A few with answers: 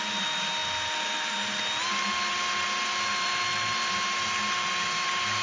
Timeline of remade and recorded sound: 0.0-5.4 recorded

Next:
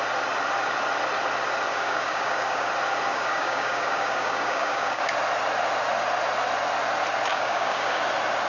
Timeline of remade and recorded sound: 0.0-1.7 recorded; 1.7-2.7 remade; 2.7-3.1 recorded; 3.1-5.1 remade; 5.1-7.3 recorded; 7.3-8.0 remade; 8.0-8.5 recorded

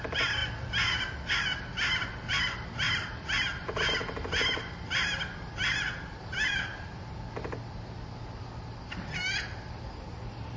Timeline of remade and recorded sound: 0.0-10.6 recorded

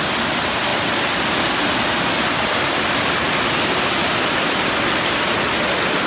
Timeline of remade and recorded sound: 0.0-6.1 recorded

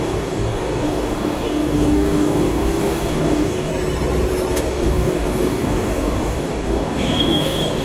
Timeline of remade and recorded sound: 0.0-3.7 remade; 3.7-4.5 recorded; 4.5-7.8 remade

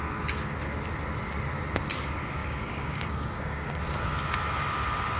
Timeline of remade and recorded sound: 0.0-2.4 recorded; 2.4-3.8 remade; 3.8-5.2 recorded

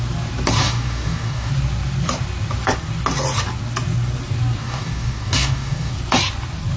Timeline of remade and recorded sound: 0.0-0.6 recorded; 0.6-1.5 remade; 1.5-4.6 recorded; 4.6-5.9 remade; 5.9-6.8 recorded

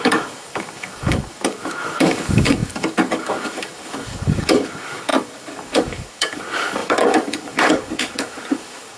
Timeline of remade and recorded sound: 0.0-9.0 remade